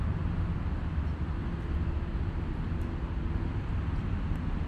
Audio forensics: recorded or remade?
recorded